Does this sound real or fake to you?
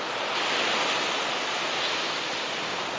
real